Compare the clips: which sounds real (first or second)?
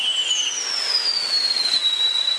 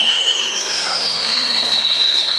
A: first